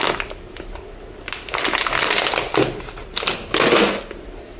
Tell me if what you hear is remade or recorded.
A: recorded